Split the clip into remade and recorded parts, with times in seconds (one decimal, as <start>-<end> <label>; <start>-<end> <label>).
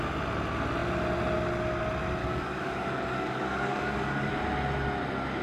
0.0-2.2 recorded; 2.2-4.3 remade; 4.3-5.4 recorded